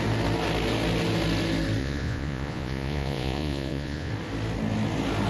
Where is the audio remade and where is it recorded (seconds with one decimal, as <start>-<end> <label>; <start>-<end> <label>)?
0.0-1.8 recorded; 1.8-4.1 remade; 4.1-5.3 recorded